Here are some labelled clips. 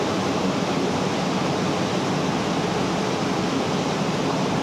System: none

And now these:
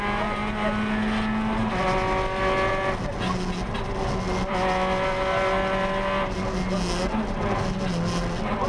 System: none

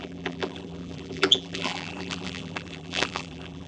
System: vocoder, BigVGAN v2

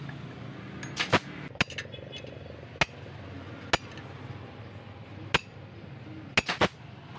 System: none